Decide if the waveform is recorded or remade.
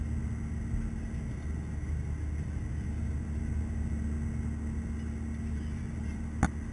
recorded